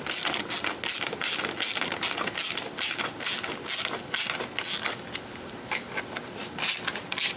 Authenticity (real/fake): real